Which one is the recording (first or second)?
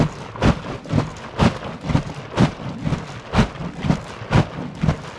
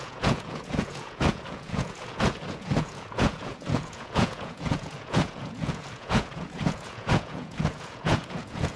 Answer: first